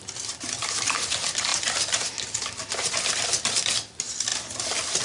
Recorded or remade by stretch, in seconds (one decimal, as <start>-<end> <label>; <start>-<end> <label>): 0.0-5.0 recorded